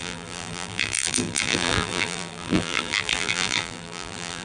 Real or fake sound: fake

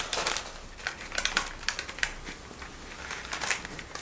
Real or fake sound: real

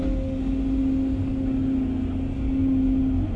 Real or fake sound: real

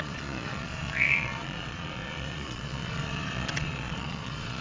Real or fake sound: fake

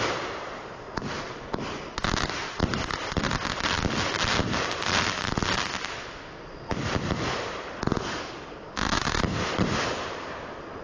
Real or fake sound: real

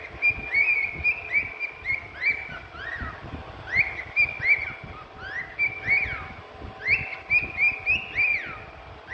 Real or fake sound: real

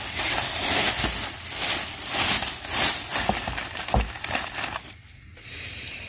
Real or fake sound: real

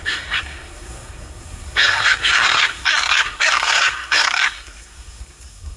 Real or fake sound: fake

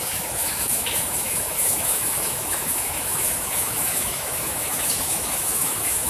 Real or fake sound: fake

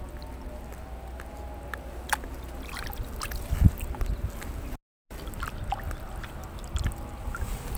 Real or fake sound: real